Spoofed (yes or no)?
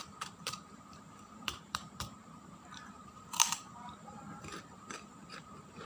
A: yes